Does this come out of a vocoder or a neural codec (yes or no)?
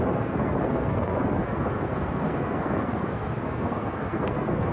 yes